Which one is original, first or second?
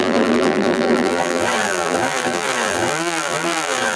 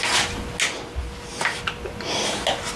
second